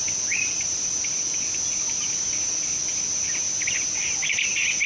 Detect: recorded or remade recorded